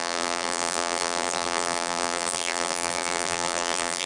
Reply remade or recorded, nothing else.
remade